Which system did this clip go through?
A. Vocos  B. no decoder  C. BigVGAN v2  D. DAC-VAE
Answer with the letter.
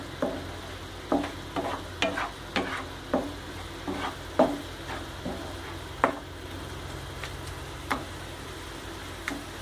B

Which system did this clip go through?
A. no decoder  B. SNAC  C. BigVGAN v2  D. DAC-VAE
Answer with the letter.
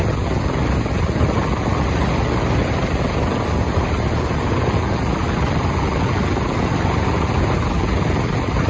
A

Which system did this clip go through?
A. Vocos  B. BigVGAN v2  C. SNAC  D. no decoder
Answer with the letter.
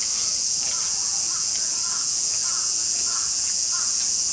A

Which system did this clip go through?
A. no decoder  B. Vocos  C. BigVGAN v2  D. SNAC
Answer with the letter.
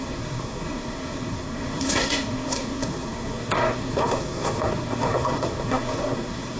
D